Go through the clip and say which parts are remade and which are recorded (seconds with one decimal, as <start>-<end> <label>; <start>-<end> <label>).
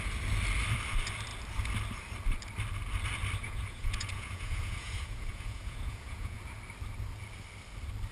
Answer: 0.0-3.4 recorded; 3.4-6.4 remade; 6.4-8.1 recorded